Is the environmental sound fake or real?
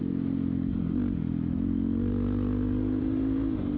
real